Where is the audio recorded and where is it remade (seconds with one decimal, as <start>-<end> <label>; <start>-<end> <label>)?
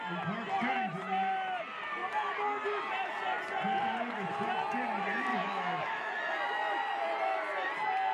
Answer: 0.0-5.3 recorded; 5.3-6.1 remade; 6.1-8.1 recorded